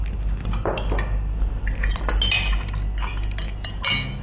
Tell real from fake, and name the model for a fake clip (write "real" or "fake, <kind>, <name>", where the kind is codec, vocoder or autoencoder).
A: real